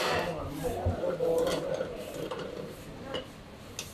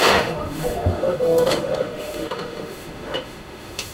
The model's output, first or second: second